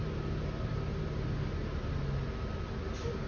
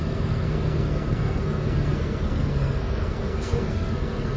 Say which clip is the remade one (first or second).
second